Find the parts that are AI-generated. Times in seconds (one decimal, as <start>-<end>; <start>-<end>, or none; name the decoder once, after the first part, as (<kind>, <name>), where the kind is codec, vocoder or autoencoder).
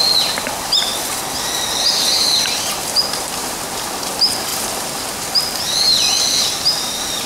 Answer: 0.0-0.9 (vocoder, BigVGAN v2); 1.6-7.3